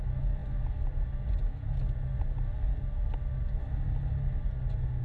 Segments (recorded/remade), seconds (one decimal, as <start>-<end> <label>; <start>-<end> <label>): 0.0-5.0 recorded